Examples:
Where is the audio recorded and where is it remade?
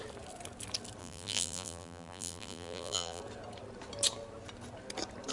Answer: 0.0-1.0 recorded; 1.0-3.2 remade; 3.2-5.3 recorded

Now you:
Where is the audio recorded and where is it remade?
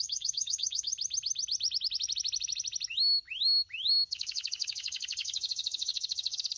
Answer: 0.0-0.9 remade; 0.9-3.9 recorded; 3.9-6.6 remade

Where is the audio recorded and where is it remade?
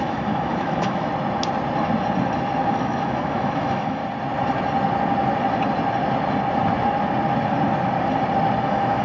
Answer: 0.0-1.1 remade; 1.1-2.7 recorded; 2.7-4.0 remade; 4.0-8.6 recorded; 8.6-9.0 remade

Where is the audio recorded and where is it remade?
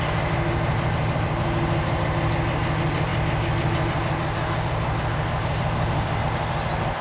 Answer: 0.0-7.0 recorded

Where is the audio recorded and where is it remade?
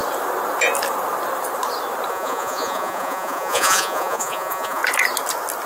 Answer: 0.0-2.1 recorded; 2.1-4.8 remade; 4.8-5.7 recorded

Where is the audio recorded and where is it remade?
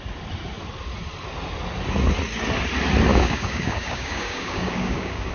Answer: 0.0-3.1 recorded; 3.1-5.3 remade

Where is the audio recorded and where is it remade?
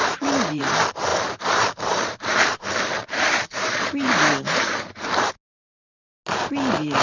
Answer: 0.0-0.6 remade; 0.6-1.1 recorded; 1.1-5.3 remade; 5.3-7.0 recorded